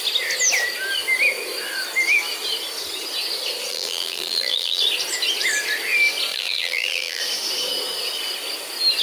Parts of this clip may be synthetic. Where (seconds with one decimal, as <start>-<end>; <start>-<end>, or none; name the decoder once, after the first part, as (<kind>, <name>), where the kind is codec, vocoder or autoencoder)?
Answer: 3.7-4.8 (vocoder, BigVGAN v2); 6.3-7.2